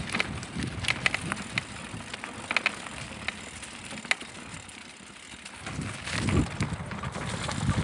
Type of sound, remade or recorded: recorded